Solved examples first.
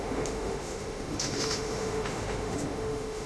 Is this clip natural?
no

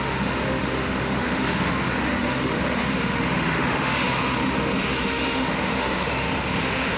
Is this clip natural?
no